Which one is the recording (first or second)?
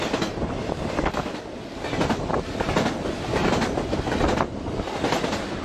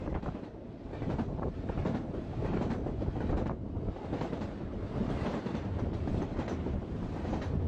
first